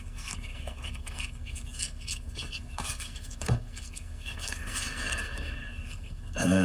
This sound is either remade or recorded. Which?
remade